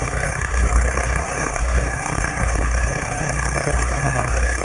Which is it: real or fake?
fake